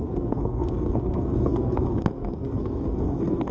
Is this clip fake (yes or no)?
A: yes